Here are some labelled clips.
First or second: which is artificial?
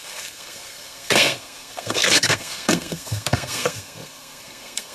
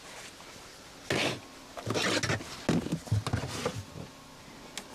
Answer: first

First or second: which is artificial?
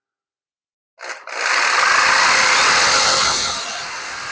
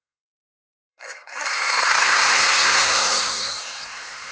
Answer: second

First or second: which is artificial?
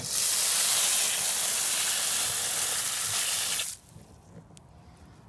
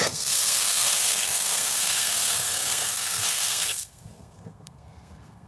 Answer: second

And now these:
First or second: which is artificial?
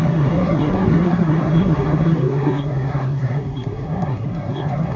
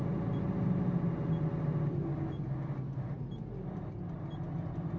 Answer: first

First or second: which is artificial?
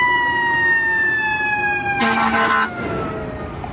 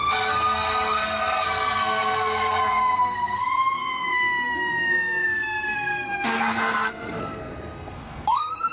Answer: second